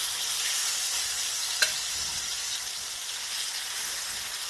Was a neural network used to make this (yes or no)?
no